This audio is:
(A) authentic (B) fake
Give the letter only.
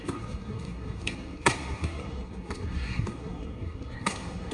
B